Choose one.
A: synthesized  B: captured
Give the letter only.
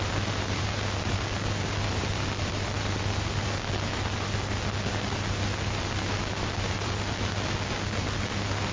B